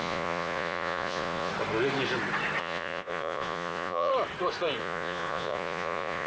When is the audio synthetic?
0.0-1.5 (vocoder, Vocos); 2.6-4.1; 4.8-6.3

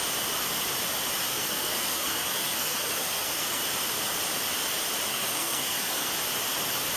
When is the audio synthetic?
1.3-3.6 (codec, SNAC); 5.1-6.1

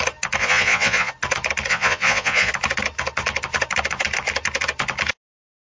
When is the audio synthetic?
0.4-1.1 (vocoder, Vocos); 1.7-2.5

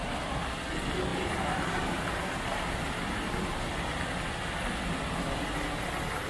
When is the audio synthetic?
none

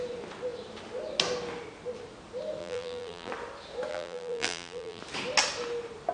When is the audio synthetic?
2.6-3.3 (vocoder, BigVGAN v2); 3.9-5.0

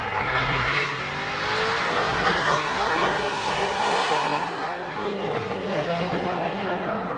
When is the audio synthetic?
0.0-1.0 (codec, SNAC); 1.9-7.2

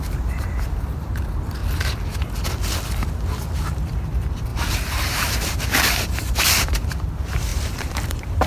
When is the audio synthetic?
0.0-1.6 (vocoder, BigVGAN v2); 3.6-8.5